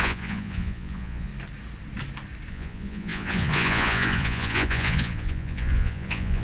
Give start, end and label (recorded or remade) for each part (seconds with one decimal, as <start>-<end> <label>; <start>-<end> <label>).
0.0-1.3 remade; 1.3-2.5 recorded; 2.5-6.4 remade